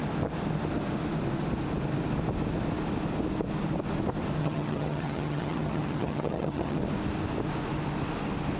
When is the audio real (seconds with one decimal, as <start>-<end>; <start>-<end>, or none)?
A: 0.0-4.4; 6.8-8.6